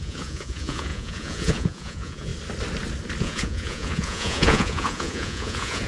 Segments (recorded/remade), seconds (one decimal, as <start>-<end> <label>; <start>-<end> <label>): 0.0-2.3 remade; 2.3-3.2 recorded; 3.2-5.9 remade